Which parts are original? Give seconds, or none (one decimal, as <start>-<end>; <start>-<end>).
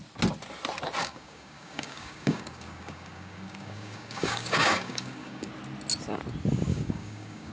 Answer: 0.0-1.0; 5.5-6.7